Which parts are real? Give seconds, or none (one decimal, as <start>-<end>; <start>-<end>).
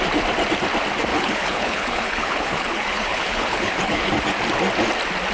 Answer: 0.0-1.1; 4.1-5.3